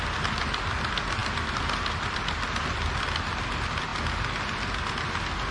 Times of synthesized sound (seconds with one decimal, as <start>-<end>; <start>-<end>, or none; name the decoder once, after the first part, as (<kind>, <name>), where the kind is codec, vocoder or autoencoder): none